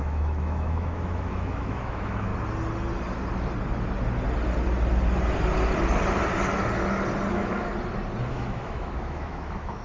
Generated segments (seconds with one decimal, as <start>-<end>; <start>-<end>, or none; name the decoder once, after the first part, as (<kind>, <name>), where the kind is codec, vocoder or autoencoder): 0.0-2.3 (autoencoder, DAC-VAE); 7.3-7.7; 8.3-9.8